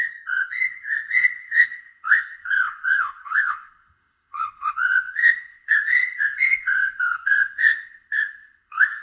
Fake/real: fake